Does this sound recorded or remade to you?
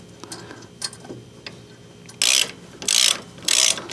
recorded